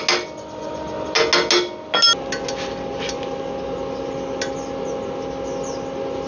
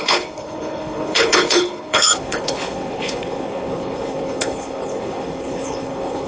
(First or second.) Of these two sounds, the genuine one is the first